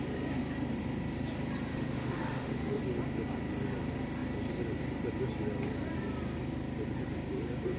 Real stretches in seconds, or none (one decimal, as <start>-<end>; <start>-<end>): 0.0-1.7; 2.8-7.8